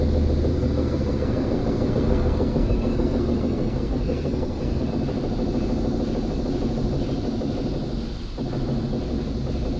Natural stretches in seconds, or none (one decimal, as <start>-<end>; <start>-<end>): 0.0-0.5; 4.9-9.8